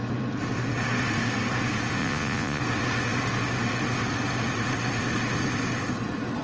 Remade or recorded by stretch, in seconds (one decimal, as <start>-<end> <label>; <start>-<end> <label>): 0.0-2.0 recorded; 2.0-2.6 remade; 2.6-6.4 recorded